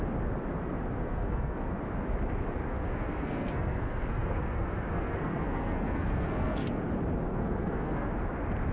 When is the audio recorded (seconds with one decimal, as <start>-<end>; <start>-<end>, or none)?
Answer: 0.0-1.0; 1.8-2.6; 6.8-7.3; 8.1-8.7